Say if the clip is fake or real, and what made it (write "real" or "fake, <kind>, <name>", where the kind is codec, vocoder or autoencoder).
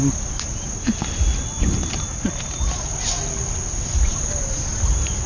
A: real